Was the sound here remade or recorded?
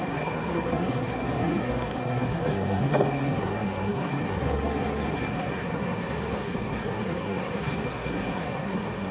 remade